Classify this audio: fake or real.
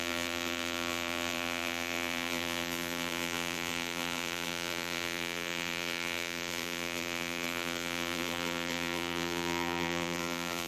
fake